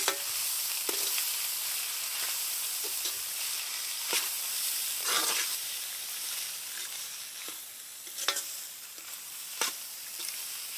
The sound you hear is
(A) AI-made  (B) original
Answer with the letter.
A